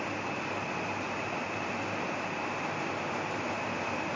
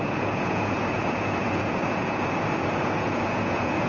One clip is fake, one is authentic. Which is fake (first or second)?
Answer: second